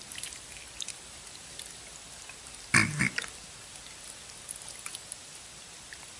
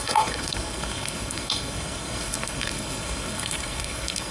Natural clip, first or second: first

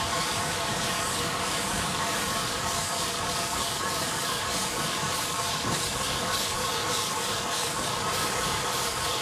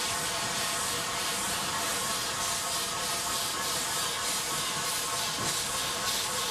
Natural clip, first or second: second